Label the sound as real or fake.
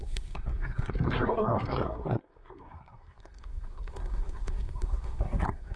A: fake